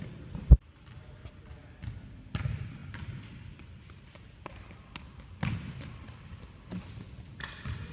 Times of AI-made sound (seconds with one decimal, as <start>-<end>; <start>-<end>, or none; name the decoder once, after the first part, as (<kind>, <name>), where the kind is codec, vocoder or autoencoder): none